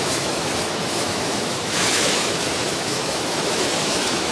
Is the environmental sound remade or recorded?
remade